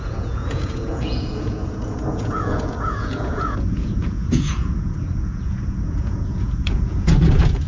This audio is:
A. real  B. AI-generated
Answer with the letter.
B